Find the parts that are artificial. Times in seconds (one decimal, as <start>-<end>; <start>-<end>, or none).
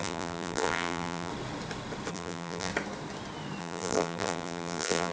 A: 0.0-1.3; 2.1-2.7; 3.6-5.1